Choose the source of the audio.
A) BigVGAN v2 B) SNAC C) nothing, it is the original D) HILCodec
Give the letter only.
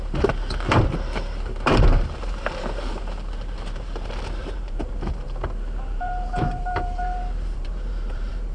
A